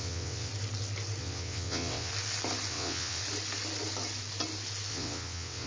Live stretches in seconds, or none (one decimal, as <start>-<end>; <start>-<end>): 0.5-1.2; 2.1-2.7; 3.2-4.9